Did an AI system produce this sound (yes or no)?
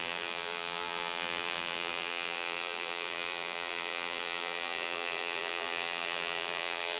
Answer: yes